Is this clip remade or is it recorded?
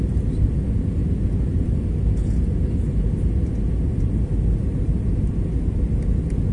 recorded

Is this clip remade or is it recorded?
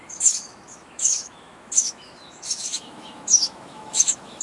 remade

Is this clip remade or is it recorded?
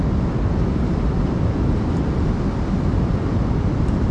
recorded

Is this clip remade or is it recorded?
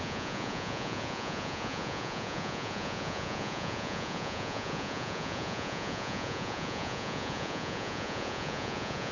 remade